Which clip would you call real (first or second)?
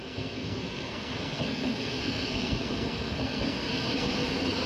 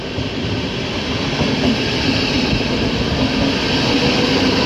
second